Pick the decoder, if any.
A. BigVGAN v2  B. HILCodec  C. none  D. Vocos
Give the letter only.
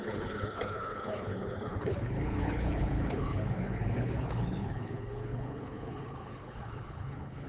B